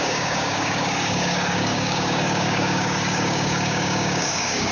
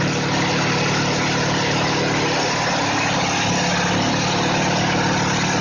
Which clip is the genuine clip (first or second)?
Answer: second